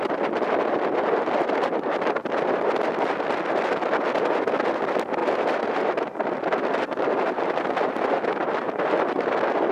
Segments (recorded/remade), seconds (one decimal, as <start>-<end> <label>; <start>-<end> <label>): 0.0-5.2 recorded; 5.2-6.3 remade; 6.3-9.7 recorded